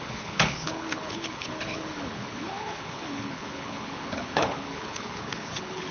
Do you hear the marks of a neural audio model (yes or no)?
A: yes